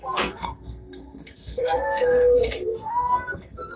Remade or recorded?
remade